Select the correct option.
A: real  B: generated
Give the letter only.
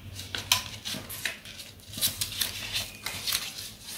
A